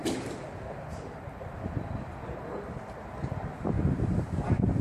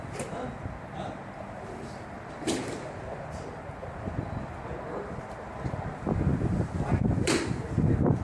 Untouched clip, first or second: second